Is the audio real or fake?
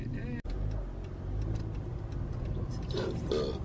real